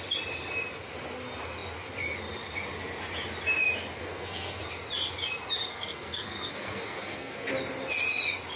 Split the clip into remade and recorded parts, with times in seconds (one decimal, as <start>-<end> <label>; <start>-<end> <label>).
0.0-4.0 recorded; 4.0-4.6 remade; 4.6-5.7 recorded; 5.7-7.5 remade; 7.5-8.6 recorded